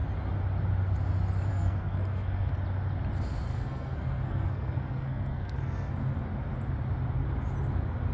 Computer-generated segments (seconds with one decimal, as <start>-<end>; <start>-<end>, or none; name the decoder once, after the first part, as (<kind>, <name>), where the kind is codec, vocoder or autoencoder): 1.5-2.5 (codec, SNAC); 3.5-5.9